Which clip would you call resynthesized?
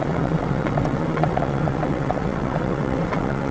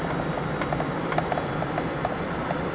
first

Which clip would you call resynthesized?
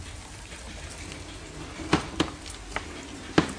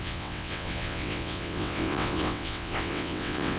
second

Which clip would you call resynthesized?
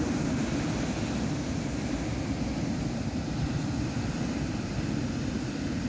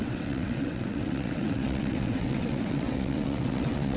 second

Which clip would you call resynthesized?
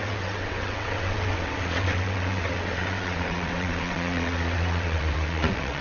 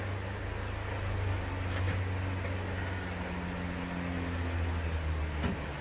first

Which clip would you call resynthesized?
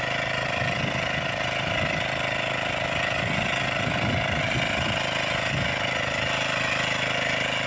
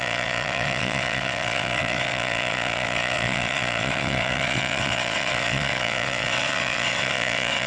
second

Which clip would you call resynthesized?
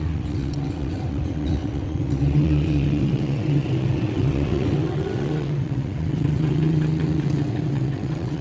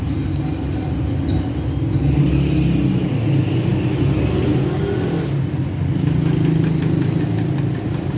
first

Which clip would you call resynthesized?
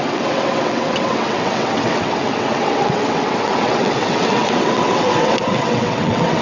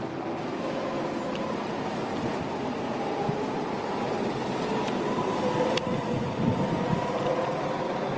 first